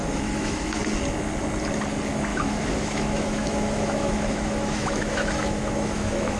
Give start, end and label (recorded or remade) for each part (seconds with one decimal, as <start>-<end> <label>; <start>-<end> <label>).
0.0-0.8 remade; 0.8-2.3 recorded; 2.3-6.4 remade